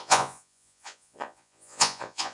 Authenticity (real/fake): fake